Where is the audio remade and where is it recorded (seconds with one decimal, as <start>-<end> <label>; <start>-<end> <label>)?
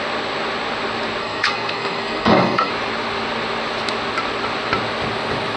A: 0.0-1.2 recorded; 1.2-2.7 remade; 2.7-5.6 recorded